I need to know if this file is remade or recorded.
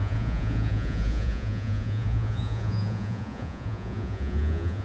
remade